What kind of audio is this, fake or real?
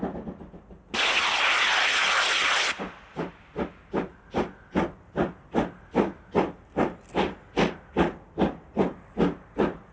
real